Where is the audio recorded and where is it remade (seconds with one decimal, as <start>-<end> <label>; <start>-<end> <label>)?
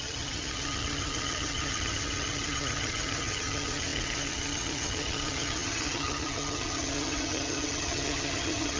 0.0-8.8 remade